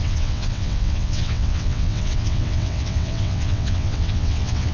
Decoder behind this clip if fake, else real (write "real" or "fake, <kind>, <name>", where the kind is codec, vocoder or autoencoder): fake, vocoder, WaveNeXt